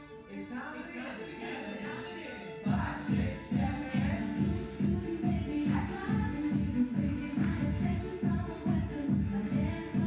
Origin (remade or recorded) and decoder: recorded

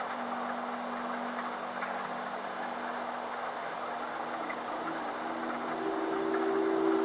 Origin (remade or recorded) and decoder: recorded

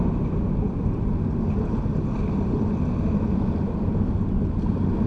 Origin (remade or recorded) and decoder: recorded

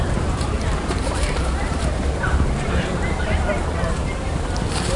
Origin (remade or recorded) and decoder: remade, vocoder, BigVGAN v2